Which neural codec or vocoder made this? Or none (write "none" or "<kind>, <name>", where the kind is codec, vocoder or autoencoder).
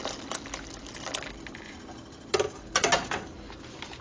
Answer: none